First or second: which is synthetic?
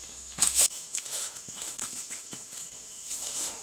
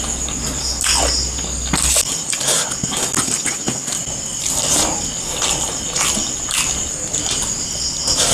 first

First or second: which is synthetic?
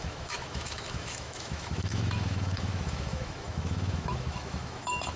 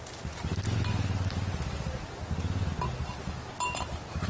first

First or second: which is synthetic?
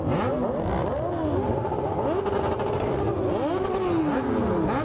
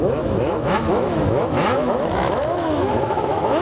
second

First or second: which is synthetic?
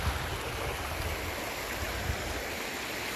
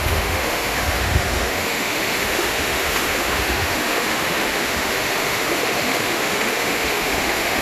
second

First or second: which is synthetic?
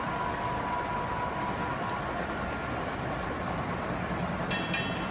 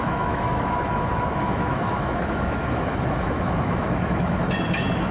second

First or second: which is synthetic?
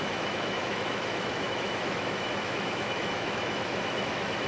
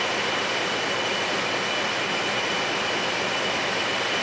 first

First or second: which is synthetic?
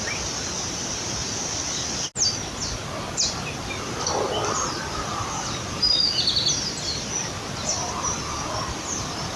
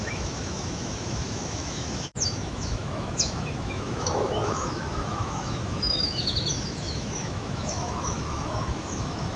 second